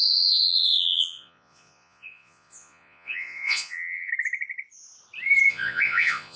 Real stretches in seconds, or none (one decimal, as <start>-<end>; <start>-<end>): 4.1-5.5